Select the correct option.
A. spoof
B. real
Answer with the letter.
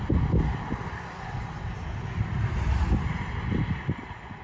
B